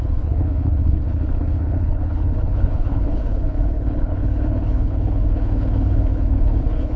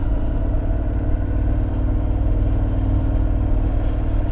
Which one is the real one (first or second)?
second